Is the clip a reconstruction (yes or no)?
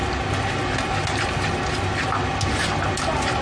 no